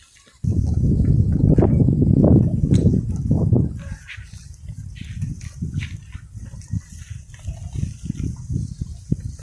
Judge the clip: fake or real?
real